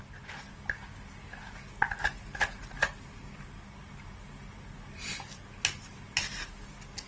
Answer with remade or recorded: recorded